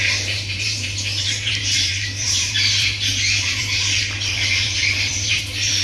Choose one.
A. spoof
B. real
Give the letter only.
A